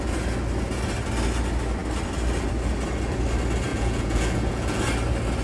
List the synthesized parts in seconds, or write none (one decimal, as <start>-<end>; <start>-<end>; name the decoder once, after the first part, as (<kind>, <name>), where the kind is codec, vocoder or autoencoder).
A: 3.7-4.8 (vocoder, Vocos)

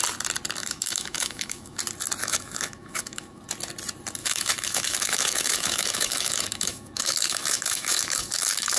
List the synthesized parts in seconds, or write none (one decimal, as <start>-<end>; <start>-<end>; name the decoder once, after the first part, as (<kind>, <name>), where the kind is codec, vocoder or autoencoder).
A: 0.6-1.8 (autoencoder, DAC-VAE); 2.2-3.4; 4.2-8.8

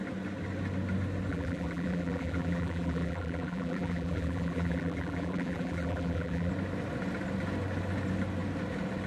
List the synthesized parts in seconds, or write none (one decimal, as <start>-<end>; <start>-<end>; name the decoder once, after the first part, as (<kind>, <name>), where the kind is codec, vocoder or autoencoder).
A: 1.3-6.5 (vocoder, BigVGAN v2)

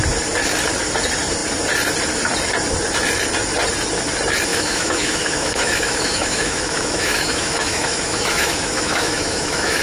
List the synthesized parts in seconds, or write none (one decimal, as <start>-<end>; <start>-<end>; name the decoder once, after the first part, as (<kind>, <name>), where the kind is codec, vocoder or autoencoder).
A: 4.5-9.8 (autoencoder, DAC-VAE)